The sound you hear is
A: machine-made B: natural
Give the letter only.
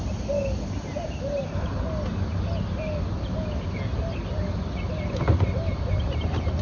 B